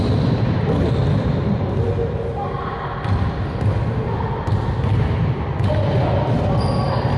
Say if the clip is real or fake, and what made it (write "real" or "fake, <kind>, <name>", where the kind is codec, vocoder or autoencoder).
real